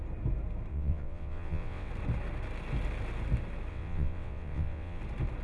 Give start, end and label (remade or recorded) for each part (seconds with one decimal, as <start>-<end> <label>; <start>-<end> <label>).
0.0-0.7 recorded; 0.7-1.9 remade; 1.9-3.7 recorded; 3.7-5.0 remade; 5.0-5.4 recorded